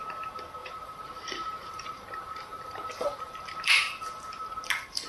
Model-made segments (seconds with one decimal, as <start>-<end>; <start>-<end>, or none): 0.6-3.7